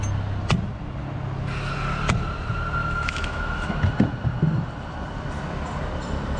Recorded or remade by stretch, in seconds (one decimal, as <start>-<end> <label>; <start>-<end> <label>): 0.0-2.8 recorded; 2.8-3.7 remade; 3.7-6.4 recorded